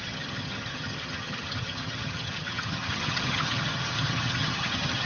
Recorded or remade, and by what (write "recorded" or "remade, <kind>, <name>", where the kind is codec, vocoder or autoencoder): remade, vocoder, HiFi-GAN